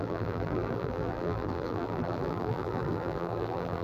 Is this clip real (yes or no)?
no